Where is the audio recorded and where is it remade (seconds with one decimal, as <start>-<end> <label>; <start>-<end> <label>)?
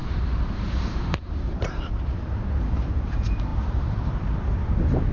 0.0-5.1 remade